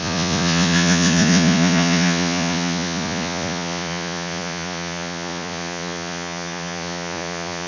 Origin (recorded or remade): remade